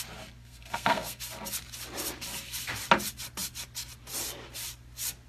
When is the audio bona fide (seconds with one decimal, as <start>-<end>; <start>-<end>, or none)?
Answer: 0.0-0.4; 1.2-5.3